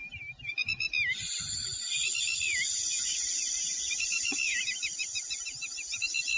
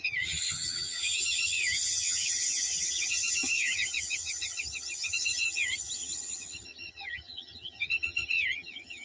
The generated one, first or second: second